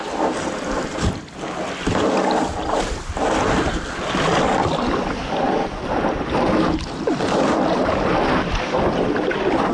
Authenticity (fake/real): real